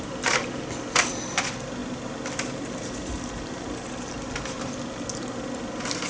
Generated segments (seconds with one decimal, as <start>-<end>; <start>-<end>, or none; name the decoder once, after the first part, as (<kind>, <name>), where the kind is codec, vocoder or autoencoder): none